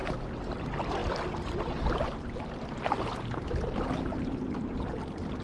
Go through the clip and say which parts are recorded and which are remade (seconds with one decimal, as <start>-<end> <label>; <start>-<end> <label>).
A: 0.0-0.6 recorded; 0.6-4.1 remade; 4.1-5.4 recorded